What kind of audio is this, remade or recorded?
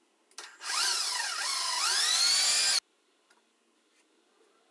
recorded